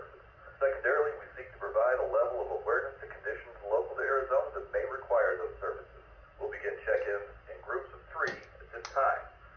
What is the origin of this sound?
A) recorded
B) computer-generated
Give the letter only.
A